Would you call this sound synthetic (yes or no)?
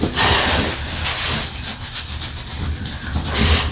no